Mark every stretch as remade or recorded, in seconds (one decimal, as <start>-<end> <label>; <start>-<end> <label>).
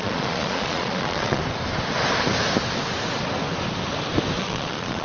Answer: 0.0-1.4 remade; 1.4-4.4 recorded; 4.4-5.0 remade